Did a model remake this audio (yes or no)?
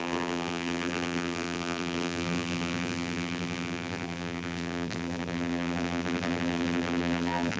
yes